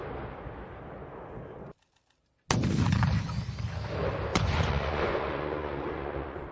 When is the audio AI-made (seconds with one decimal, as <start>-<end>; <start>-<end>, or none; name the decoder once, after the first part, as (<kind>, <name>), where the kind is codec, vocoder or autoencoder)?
4.3-6.5 (vocoder, Vocos)